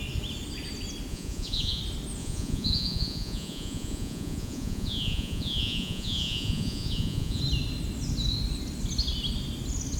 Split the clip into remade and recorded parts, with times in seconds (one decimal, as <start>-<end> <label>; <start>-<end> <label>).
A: 0.0-1.1 recorded; 1.1-1.8 remade; 1.8-2.2 recorded; 2.2-7.4 remade; 7.4-10.0 recorded